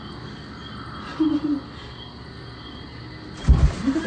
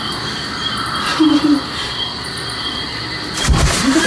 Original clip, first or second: first